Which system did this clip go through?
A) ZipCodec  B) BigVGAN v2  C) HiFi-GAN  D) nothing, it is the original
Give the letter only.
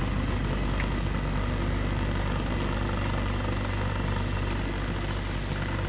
D